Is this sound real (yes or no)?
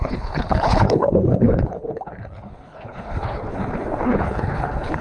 no